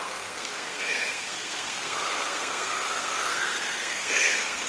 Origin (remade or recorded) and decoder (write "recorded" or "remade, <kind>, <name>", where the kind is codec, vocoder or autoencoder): remade, codec, SNAC